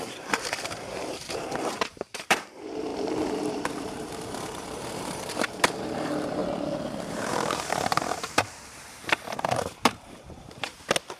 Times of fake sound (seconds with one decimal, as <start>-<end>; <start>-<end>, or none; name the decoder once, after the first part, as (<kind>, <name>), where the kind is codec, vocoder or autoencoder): 0.0-6.4 (vocoder, BigVGAN v2); 7.1-10.7